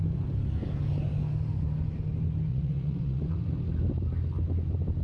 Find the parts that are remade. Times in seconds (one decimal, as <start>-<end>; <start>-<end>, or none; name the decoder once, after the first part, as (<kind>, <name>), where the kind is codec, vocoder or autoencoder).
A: 2.5-3.5 (vocoder, Vocos)